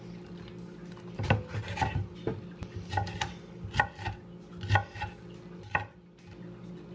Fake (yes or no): no